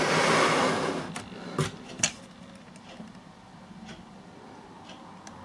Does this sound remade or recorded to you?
recorded